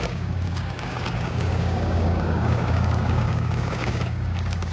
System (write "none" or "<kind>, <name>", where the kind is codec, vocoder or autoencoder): codec, DAC